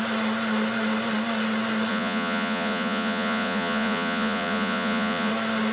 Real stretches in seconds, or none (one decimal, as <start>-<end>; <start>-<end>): 0.0-1.9; 5.3-5.7